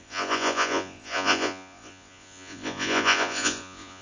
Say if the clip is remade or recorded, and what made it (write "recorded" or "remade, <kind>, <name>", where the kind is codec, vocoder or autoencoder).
remade, vocoder, Vocos